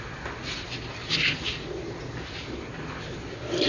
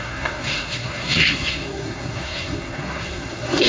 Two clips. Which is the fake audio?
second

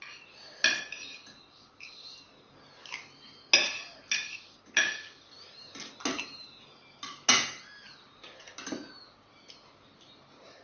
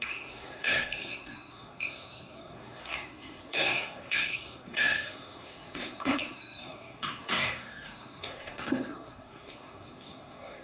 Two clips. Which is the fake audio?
second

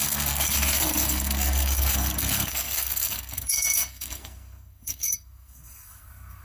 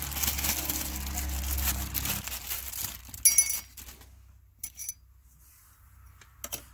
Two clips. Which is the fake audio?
first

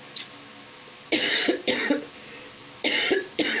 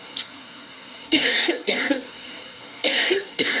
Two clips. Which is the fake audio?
second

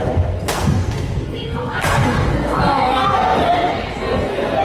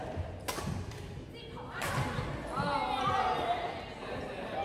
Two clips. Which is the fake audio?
first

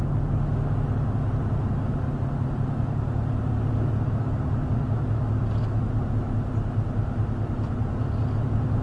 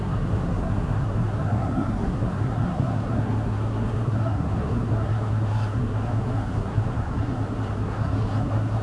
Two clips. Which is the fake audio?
second